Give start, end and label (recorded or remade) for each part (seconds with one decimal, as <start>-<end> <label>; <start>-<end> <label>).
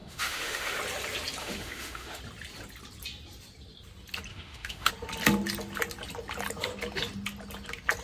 0.0-0.8 remade; 0.8-1.4 recorded; 1.4-2.2 remade; 2.2-4.3 recorded; 4.3-4.9 remade; 4.9-8.0 recorded